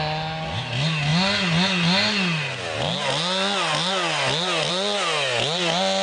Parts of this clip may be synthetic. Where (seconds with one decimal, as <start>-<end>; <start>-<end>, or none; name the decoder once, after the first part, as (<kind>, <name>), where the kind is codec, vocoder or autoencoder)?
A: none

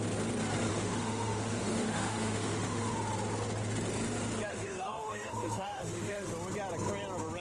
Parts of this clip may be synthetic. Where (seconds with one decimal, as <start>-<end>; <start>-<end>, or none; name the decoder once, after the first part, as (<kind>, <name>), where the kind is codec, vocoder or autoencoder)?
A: 0.7-2.9 (autoencoder, DAC-VAE); 4.5-6.3

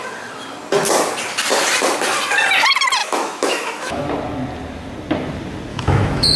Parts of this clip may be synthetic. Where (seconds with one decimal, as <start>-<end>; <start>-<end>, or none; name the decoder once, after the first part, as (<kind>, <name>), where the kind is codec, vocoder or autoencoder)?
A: 3.0-4.0 (autoencoder, DAC-VAE); 5.7-6.4

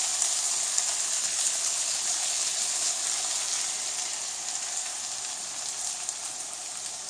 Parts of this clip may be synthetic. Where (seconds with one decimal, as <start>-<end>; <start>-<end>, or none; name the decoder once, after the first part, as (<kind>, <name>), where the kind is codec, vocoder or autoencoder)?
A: 1.2-3.0 (codec, HILCodec)

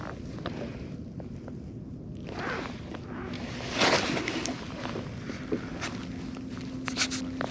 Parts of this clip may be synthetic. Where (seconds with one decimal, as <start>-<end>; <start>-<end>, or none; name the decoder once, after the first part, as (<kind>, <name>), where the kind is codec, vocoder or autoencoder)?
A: none